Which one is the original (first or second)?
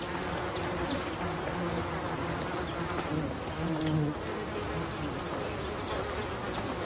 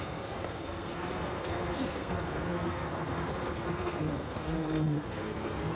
first